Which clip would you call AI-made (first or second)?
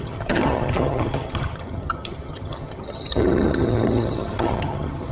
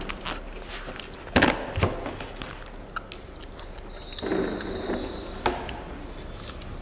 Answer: first